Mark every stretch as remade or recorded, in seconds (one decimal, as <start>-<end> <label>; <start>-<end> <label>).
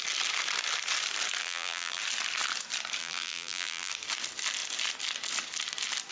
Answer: 0.0-1.4 recorded; 1.4-2.0 remade; 2.0-3.0 recorded; 3.0-3.9 remade; 3.9-6.1 recorded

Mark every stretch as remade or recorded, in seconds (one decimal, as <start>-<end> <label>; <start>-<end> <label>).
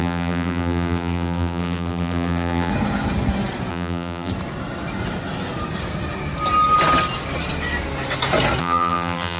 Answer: 0.0-2.7 remade; 2.7-3.7 recorded; 3.7-4.3 remade; 4.3-8.6 recorded; 8.6-9.4 remade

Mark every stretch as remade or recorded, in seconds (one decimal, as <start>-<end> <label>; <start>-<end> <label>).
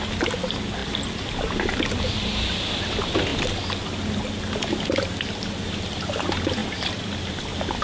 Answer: 0.0-6.6 recorded; 6.6-7.1 remade; 7.1-7.8 recorded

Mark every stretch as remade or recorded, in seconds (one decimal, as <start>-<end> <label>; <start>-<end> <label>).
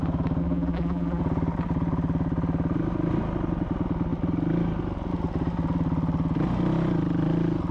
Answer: 0.0-0.4 recorded; 0.4-1.2 remade; 1.2-7.7 recorded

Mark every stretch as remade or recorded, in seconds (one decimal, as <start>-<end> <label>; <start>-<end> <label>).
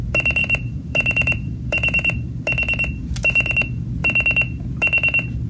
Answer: 0.0-0.4 recorded; 0.4-2.2 remade; 2.2-5.5 recorded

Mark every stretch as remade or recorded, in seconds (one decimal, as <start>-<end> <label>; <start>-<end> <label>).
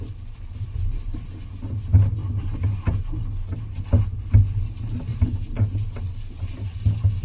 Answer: 0.0-5.1 recorded; 5.1-6.0 remade; 6.0-7.2 recorded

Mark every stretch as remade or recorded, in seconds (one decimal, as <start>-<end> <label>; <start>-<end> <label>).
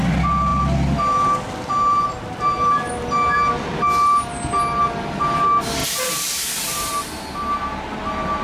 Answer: 0.0-5.8 recorded; 5.8-6.9 remade; 6.9-8.4 recorded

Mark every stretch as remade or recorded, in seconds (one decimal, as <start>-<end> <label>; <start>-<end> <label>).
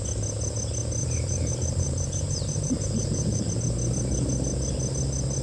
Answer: 0.0-1.0 recorded; 1.0-3.5 remade; 3.5-5.4 recorded